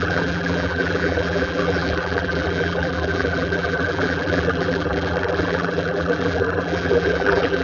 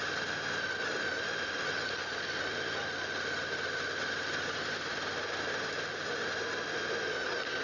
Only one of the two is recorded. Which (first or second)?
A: second